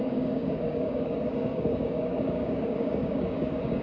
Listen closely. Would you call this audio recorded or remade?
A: remade